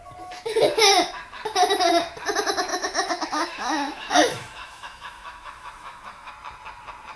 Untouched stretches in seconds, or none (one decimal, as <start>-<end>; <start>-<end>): 0.0-2.7; 6.3-7.2